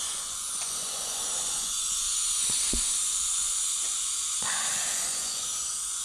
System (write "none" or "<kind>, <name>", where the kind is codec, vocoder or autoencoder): vocoder, Vocos